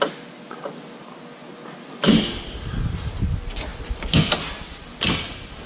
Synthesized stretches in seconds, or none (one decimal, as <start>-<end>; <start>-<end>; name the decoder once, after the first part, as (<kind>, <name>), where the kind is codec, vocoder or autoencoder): none